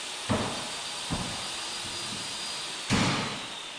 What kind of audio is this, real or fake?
real